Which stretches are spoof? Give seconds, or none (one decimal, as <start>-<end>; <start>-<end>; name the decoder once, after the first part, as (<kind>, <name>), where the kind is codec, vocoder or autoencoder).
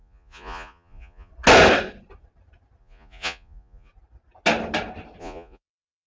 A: 0.0-1.3 (vocoder, Vocos); 2.8-3.9; 5.2-6.1